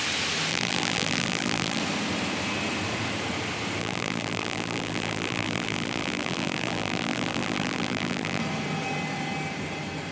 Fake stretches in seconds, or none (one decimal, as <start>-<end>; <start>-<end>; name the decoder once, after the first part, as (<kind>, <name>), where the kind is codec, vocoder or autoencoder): 0.5-1.8 (vocoder, BigVGAN v2); 3.8-8.4